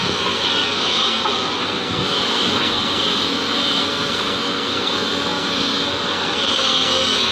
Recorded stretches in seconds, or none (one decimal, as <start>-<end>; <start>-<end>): none